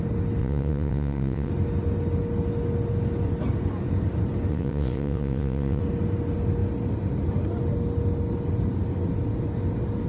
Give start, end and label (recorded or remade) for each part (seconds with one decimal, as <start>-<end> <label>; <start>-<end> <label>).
0.0-0.4 recorded; 0.4-1.5 remade; 1.5-4.5 recorded; 4.5-5.8 remade; 5.8-10.1 recorded